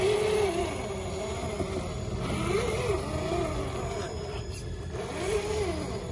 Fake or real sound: real